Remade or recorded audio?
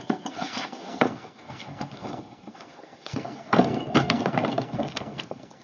remade